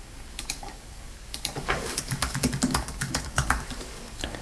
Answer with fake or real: fake